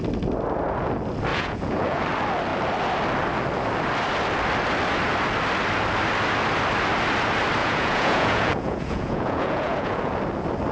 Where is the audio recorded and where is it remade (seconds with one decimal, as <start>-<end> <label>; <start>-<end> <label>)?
0.0-1.3 recorded; 1.3-2.0 remade; 2.0-7.6 recorded; 7.6-10.1 remade; 10.1-10.7 recorded